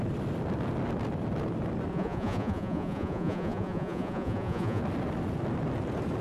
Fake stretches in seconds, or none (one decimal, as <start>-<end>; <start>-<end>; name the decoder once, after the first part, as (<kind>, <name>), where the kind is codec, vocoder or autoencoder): 1.9-4.8 (vocoder, Vocos)